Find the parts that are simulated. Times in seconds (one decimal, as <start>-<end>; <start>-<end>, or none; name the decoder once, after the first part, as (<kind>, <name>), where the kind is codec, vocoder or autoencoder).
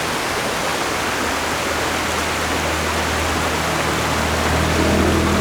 none